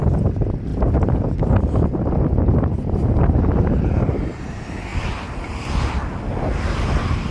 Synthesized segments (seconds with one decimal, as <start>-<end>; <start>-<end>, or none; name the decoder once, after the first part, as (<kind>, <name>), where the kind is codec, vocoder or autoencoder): 0.7-3.9 (vocoder, BigVGAN v2)